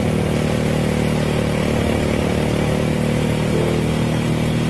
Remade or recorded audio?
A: recorded